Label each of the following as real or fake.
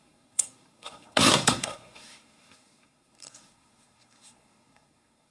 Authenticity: fake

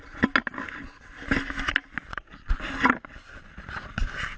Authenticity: real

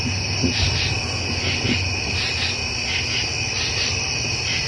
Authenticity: real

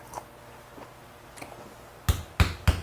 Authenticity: real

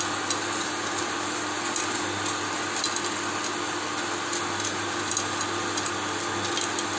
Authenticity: real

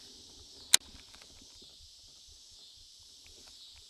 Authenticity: real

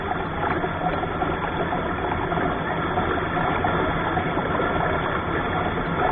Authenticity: real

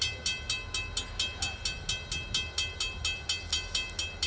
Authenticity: real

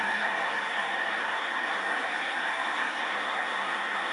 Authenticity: fake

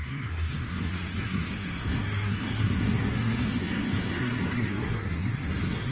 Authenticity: fake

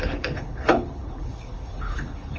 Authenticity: fake